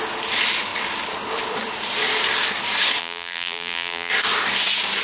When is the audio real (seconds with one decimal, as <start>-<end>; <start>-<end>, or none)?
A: 0.0-3.0; 4.1-5.0